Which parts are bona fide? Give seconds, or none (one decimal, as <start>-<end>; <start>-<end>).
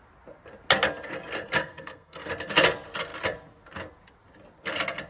0.0-1.6; 2.3-5.1